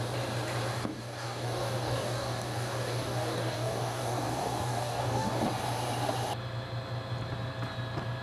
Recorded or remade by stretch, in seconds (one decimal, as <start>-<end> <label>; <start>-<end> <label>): 0.0-0.7 recorded; 0.7-5.4 remade; 5.4-8.2 recorded